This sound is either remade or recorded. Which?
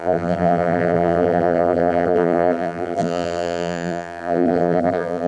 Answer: remade